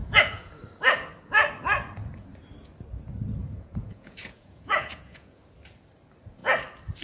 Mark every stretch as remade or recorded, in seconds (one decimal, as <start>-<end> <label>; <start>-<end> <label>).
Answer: 0.0-0.5 remade; 0.5-3.4 recorded; 3.4-5.4 remade; 5.4-7.0 recorded